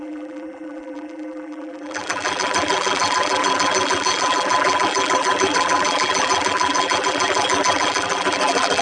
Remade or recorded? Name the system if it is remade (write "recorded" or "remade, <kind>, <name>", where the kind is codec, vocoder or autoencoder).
remade, vocoder, BigVGAN v2